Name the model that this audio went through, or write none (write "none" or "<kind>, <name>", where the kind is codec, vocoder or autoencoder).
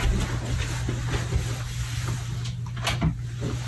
none